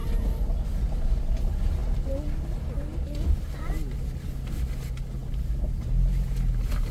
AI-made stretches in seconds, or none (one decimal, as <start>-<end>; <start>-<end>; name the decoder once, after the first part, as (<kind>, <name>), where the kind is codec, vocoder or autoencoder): none